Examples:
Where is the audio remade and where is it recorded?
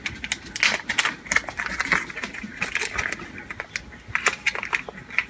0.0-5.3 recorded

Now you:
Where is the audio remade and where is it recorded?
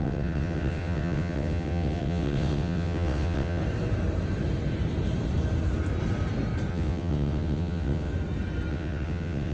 0.0-3.6 remade; 3.6-6.7 recorded; 6.7-8.1 remade; 8.1-8.7 recorded; 8.7-9.5 remade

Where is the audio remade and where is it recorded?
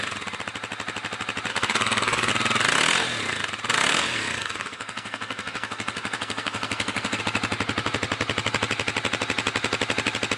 0.0-1.5 recorded; 1.5-2.3 remade; 2.3-3.9 recorded; 3.9-7.2 remade; 7.2-10.4 recorded